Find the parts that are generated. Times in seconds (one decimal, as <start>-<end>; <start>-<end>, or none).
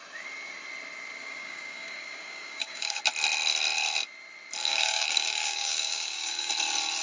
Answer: 1.2-3.0; 4.6-6.5